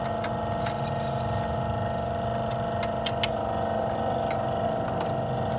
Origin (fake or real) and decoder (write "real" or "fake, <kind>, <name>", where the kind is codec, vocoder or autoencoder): real